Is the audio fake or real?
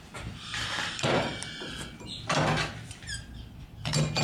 fake